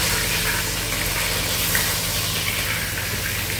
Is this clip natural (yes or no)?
yes